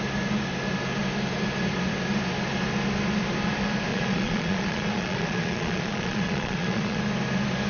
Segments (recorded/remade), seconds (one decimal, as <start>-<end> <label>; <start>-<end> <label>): 0.0-3.9 recorded; 3.9-7.0 remade; 7.0-7.7 recorded